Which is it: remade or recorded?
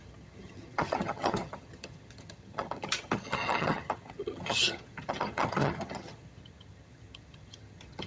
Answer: remade